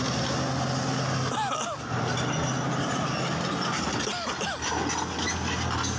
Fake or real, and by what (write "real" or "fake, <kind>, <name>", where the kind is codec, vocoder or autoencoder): real